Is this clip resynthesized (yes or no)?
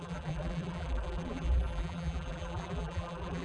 yes